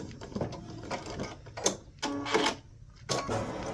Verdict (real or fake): real